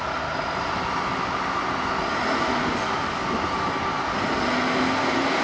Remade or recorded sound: recorded